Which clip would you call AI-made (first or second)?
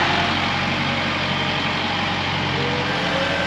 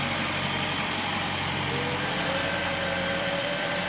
second